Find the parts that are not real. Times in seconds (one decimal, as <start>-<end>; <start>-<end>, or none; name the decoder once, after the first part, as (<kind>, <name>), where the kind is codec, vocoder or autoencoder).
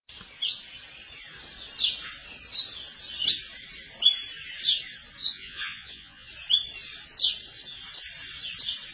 5.2-6.3 (vocoder, Vocos)